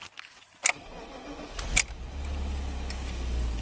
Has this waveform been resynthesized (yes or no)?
no